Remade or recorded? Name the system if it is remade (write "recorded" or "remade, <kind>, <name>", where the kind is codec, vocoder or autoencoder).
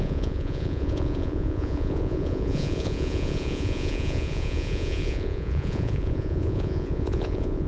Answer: remade, vocoder, Vocos